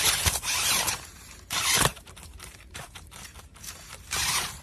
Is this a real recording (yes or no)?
no